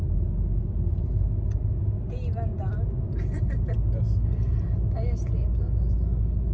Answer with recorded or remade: recorded